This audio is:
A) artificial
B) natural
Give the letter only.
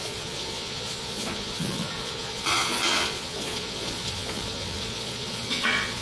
A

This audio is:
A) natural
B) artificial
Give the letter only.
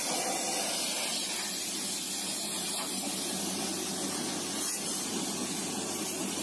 A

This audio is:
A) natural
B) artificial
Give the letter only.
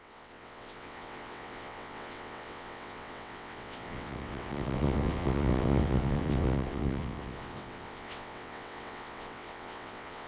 B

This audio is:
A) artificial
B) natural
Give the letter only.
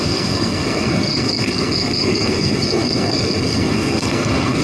A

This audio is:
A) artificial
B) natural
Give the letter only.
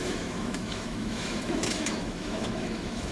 A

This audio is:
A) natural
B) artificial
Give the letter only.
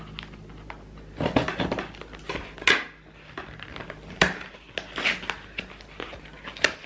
A